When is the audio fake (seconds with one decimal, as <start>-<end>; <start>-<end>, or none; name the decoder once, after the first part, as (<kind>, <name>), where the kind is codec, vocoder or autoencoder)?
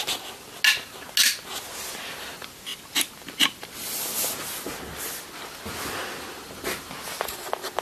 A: none